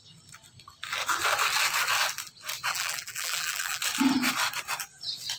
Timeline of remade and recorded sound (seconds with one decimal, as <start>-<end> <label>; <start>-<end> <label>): 0.0-2.7 recorded; 2.7-3.8 remade; 3.8-5.4 recorded

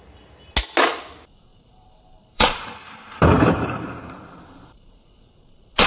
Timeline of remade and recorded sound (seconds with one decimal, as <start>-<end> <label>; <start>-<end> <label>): 0.0-1.5 recorded; 1.5-5.0 remade; 5.0-5.9 recorded